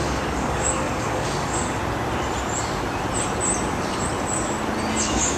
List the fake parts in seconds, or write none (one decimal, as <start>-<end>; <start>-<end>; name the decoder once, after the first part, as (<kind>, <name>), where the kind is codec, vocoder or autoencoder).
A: 0.0-1.8 (codec, DAC); 5.0-5.4